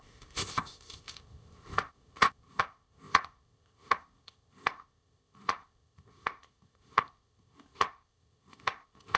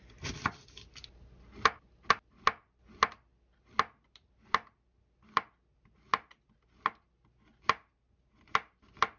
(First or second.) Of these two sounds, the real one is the second